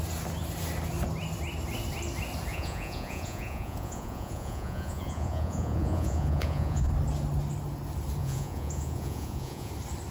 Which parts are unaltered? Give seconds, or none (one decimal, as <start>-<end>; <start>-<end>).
0.0-2.5; 6.9-8.2; 9.7-10.1